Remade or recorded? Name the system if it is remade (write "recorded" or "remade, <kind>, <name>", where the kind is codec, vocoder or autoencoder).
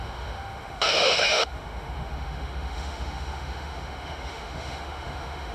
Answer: remade, autoencoder, DAC-VAE